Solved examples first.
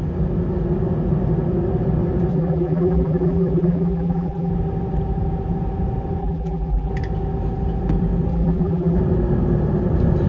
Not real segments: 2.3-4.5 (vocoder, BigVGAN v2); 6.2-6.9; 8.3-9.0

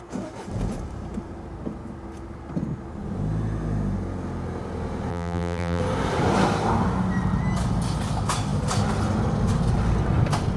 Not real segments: 5.1-5.8 (vocoder, BigVGAN v2)

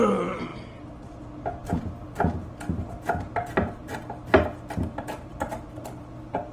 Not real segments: none

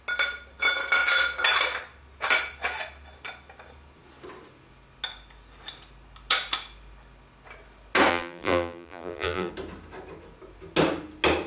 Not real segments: 8.1-9.5 (vocoder, BigVGAN v2)